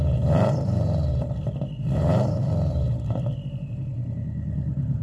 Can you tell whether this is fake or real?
fake